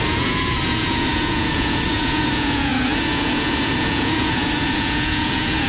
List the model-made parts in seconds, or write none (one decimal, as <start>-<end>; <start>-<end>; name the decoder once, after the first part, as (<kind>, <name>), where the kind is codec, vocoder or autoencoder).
0.0-5.7 (vocoder, Vocos)